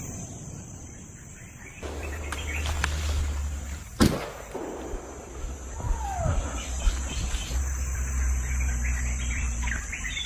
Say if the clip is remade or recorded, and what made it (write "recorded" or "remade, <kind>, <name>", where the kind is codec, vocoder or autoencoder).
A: recorded